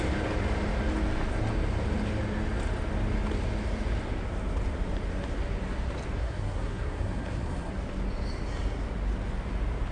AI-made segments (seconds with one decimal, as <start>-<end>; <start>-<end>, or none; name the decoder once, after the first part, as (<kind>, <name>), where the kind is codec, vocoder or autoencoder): 6.2-7.7 (codec, SNAC)